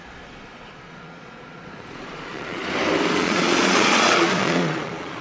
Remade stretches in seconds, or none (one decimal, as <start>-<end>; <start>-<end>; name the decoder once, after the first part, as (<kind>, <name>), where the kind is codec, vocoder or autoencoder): 0.0-2.6 (vocoder, Vocos); 3.1-5.2